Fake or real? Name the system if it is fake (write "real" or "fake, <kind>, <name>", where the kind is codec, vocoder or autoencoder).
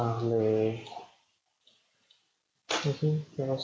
real